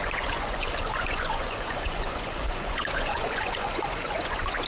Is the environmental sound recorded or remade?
remade